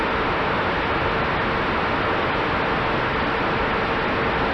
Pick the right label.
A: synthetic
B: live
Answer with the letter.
B